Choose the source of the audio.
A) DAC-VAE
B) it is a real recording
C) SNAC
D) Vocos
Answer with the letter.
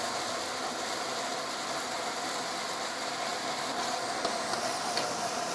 B